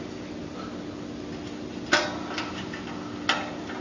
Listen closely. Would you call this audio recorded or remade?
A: recorded